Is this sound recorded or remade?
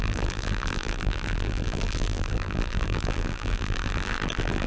remade